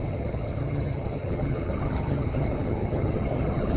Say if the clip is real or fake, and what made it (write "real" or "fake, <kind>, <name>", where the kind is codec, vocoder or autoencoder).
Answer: fake, vocoder, HiFi-GAN